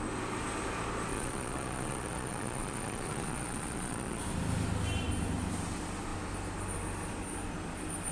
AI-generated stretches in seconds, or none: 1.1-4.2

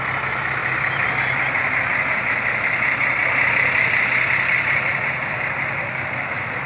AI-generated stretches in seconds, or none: 0.6-1.8; 3.2-5.8